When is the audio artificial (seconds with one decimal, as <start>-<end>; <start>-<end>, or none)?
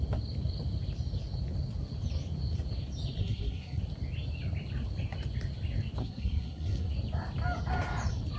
3.2-3.8; 6.0-6.9